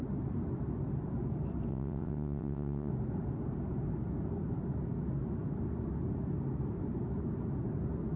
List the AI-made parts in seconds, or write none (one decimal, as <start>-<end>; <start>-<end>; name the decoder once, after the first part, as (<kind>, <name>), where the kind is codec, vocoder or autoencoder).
1.7-2.9 (vocoder, WaveNeXt)